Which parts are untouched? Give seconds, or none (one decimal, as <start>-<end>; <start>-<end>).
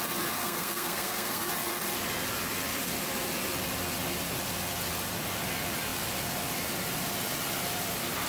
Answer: 0.0-0.4; 1.5-8.3